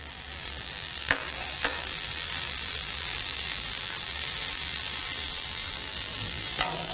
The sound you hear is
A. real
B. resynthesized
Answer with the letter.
B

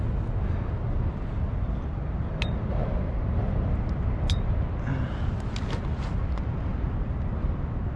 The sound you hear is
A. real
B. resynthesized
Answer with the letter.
A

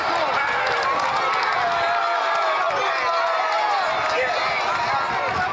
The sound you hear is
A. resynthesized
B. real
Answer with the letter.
B